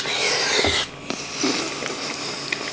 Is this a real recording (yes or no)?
yes